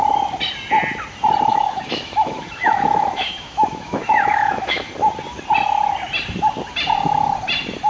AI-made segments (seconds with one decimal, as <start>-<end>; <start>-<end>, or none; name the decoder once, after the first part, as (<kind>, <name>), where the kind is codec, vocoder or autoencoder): 1.5-4.9 (autoencoder, DAC-VAE)